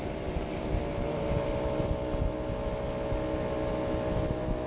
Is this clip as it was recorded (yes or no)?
yes